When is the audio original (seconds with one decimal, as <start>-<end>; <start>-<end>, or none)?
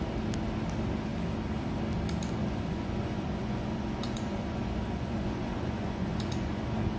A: 0.0-2.4; 6.6-7.0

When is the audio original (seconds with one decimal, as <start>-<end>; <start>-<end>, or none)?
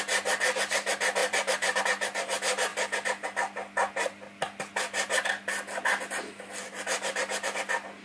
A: 0.0-1.2; 1.8-8.0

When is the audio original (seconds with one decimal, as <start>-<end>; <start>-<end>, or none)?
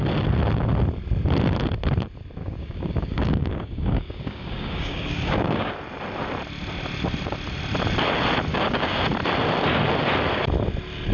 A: 0.0-2.4; 5.7-8.5; 9.0-11.1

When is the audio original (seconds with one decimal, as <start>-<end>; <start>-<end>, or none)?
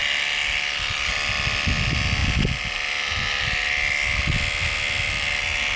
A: 0.0-5.8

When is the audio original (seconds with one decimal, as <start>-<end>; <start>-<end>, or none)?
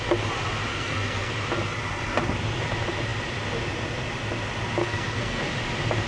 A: 0.0-0.7; 1.3-4.8; 5.4-6.1